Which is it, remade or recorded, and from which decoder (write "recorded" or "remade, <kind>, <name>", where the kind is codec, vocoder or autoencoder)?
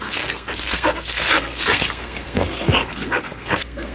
remade, codec, SNAC